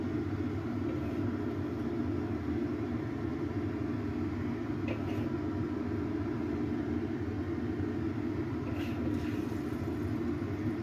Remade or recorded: recorded